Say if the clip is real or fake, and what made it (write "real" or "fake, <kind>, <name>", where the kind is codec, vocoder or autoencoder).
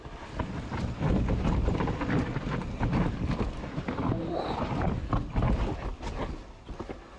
real